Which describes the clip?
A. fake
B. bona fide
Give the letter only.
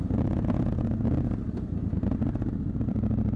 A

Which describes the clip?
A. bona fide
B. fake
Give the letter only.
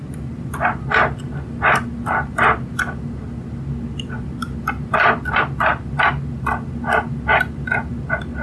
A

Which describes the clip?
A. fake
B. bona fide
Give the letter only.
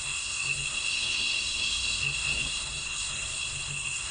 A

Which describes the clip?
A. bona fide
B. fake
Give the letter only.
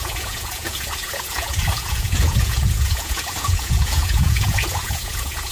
B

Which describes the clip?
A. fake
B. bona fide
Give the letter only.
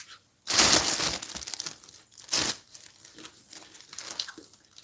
B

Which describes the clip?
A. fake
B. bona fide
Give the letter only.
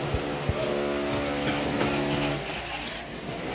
B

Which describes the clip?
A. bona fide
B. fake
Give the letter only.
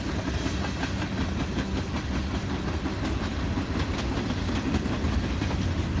A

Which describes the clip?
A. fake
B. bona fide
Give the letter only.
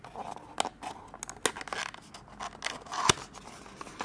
B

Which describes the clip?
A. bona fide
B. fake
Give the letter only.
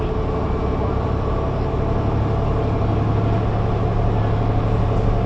A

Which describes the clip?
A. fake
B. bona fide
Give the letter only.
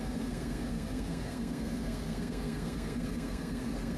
A